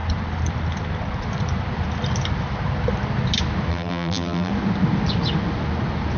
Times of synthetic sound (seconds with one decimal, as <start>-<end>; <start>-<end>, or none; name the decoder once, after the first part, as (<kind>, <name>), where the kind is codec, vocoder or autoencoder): 3.7-4.5 (vocoder, BigVGAN v2)